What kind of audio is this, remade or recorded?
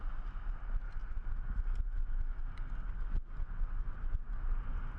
recorded